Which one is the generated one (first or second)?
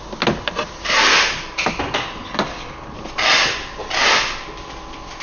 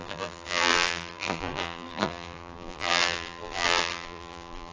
second